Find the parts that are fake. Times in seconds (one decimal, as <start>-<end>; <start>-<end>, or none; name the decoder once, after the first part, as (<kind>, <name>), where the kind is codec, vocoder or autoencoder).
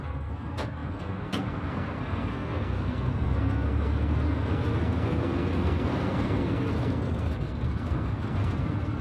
0.0-9.0 (codec, SNAC)